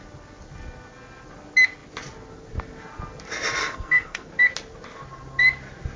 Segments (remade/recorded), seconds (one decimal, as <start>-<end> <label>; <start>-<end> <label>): 0.0-3.6 recorded; 3.6-4.3 remade; 4.3-6.0 recorded